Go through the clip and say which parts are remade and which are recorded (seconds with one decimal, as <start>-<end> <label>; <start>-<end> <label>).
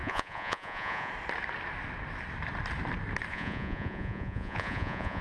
0.0-1.1 remade; 1.1-3.3 recorded; 3.3-5.2 remade